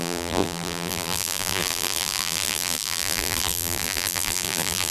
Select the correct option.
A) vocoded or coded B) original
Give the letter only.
A